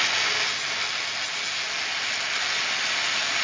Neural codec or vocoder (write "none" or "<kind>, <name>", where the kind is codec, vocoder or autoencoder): none